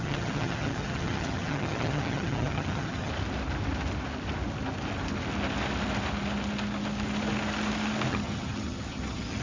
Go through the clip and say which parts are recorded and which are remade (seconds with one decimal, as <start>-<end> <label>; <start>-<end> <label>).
0.0-3.1 remade; 3.1-8.1 recorded; 8.1-9.4 remade